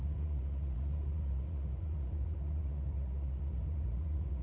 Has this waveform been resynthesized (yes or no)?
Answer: yes